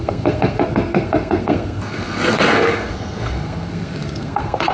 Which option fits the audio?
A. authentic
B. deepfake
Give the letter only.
B